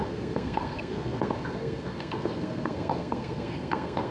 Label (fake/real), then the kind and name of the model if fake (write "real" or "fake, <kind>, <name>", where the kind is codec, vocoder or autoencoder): fake, codec, SNAC